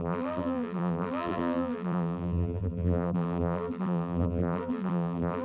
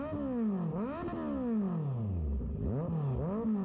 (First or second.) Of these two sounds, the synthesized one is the first